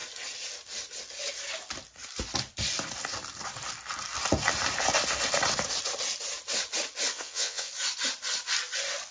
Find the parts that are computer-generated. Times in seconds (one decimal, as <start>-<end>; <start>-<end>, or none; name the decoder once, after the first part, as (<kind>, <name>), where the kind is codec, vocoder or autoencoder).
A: 7.1-7.7 (vocoder, WaveNeXt)